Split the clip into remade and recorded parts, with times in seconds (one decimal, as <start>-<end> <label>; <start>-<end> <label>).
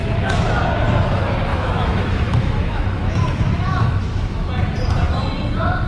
0.0-0.7 remade; 0.7-1.5 recorded; 1.5-4.5 remade; 4.5-5.9 recorded